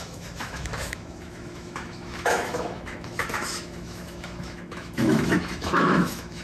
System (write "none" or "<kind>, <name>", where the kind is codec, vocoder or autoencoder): autoencoder, DAC-VAE